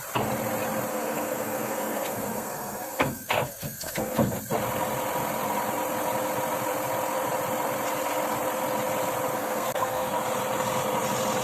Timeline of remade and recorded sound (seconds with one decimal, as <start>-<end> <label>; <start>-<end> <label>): 0.0-0.9 recorded; 0.9-4.4 remade; 4.4-9.3 recorded; 9.3-10.1 remade; 10.1-11.4 recorded